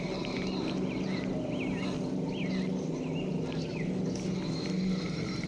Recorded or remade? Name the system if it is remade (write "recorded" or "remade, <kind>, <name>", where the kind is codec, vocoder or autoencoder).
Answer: recorded